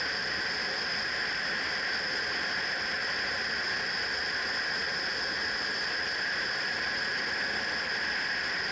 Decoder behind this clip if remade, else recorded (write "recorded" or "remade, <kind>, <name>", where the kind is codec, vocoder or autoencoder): recorded